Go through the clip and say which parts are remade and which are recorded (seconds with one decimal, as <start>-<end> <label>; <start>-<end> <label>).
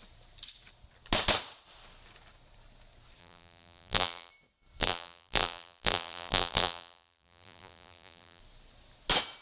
0.0-3.2 recorded; 3.2-4.3 remade; 4.3-4.8 recorded; 4.8-8.4 remade; 8.4-9.4 recorded